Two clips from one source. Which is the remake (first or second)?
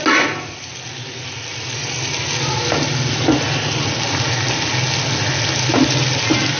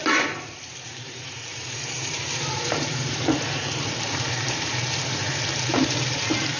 second